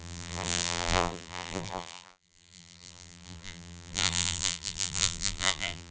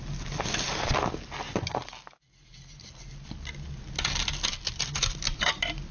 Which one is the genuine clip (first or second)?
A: second